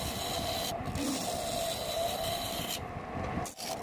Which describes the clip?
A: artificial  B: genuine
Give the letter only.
B